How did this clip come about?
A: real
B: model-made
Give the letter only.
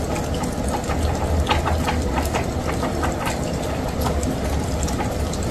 A